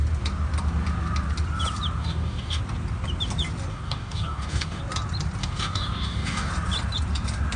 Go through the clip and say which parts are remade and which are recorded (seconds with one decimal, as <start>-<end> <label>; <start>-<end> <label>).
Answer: 0.0-2.0 recorded; 2.0-2.6 remade; 2.6-3.7 recorded; 3.7-4.8 remade; 4.8-5.4 recorded; 5.4-6.5 remade; 6.5-7.6 recorded